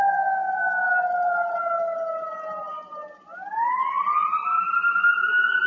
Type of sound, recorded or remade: recorded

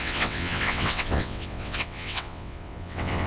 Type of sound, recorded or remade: remade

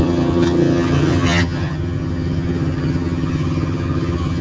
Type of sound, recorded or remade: remade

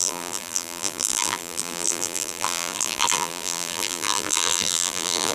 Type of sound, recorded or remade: remade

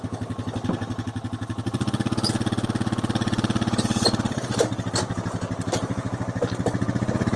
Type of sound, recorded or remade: recorded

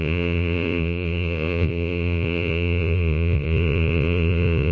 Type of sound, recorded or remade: remade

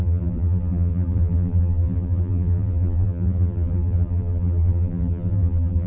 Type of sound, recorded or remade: remade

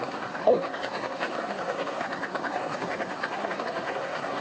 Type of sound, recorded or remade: remade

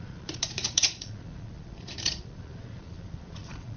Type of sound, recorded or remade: remade